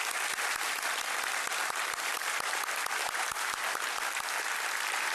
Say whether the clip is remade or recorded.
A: recorded